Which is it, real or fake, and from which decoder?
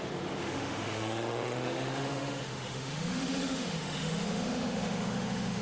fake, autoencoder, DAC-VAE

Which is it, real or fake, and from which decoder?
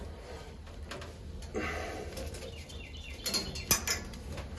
real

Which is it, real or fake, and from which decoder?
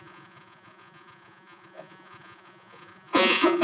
fake, vocoder, Vocos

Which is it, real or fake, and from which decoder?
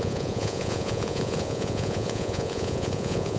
fake, vocoder, Vocos